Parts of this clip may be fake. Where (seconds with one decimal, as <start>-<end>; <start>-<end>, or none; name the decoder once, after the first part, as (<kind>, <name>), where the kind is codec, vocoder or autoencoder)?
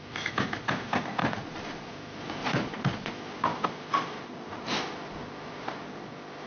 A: 1.2-1.9 (vocoder, Vocos); 2.4-3.1